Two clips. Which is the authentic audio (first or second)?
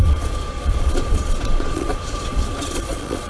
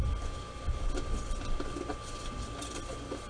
second